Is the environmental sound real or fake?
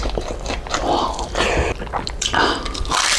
fake